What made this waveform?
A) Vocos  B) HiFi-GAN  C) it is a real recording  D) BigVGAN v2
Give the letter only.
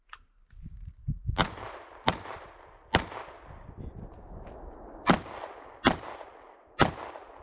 C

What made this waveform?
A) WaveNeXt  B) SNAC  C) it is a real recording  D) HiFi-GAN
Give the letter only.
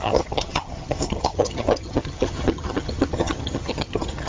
D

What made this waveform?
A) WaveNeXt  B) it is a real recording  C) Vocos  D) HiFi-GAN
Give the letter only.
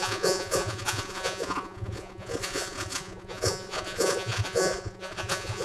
C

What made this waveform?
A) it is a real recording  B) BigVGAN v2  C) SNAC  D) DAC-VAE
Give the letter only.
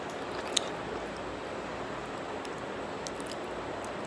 A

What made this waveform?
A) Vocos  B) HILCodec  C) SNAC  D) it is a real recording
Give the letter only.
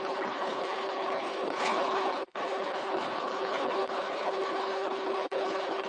B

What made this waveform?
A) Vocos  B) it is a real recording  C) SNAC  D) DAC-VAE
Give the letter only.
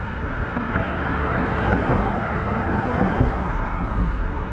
C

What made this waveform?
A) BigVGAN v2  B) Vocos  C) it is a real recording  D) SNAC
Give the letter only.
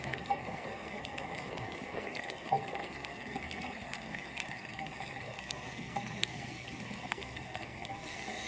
D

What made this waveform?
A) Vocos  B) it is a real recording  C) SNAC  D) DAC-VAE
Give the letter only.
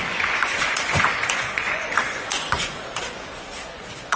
A